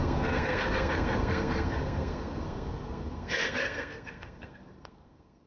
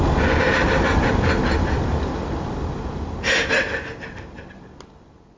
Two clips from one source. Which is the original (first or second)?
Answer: second